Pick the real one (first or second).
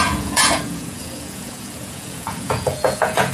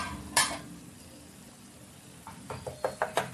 second